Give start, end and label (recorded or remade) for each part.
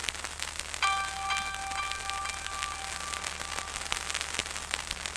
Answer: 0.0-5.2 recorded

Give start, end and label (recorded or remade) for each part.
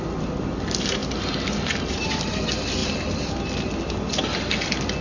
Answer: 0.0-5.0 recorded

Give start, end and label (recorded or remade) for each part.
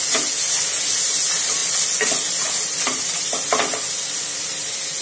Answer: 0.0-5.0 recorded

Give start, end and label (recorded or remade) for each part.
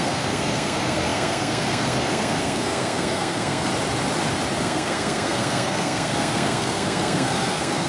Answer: 0.0-3.7 remade; 3.7-4.6 recorded; 4.6-7.9 remade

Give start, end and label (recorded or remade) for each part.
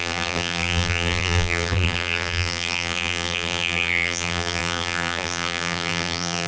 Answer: 0.0-6.5 remade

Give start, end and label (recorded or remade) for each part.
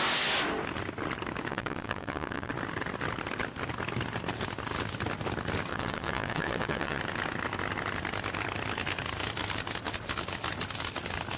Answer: 0.0-1.5 recorded; 1.5-2.5 remade; 2.5-5.7 recorded; 5.7-7.0 remade; 7.0-11.4 recorded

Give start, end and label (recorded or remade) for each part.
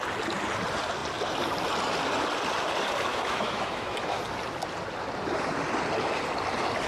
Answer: 0.0-3.1 recorded; 3.1-4.2 remade; 4.2-6.9 recorded